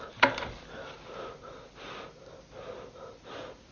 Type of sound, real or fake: real